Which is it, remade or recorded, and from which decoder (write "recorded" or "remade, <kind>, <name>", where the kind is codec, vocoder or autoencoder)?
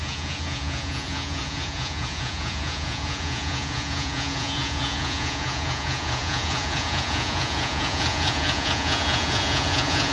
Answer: remade, vocoder, Vocos